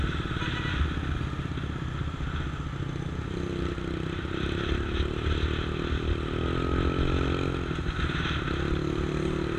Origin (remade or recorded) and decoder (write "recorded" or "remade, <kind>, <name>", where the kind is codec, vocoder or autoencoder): recorded